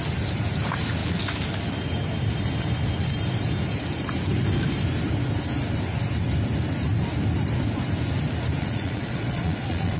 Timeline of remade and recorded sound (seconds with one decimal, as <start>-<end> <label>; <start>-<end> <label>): 0.0-8.6 recorded; 8.6-10.0 remade